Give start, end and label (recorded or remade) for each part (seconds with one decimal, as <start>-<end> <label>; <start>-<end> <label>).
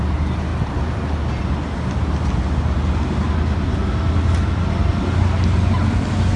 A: 0.0-6.4 recorded